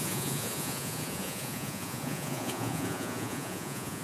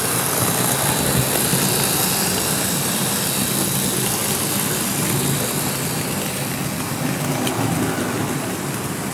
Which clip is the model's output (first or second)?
first